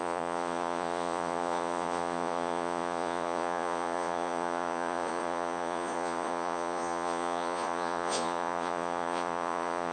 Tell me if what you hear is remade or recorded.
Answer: remade